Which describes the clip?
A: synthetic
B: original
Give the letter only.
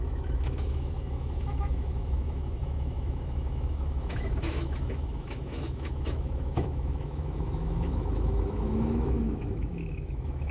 A